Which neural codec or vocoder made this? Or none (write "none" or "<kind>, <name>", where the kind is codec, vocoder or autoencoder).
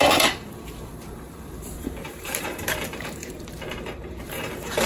vocoder, BigVGAN v2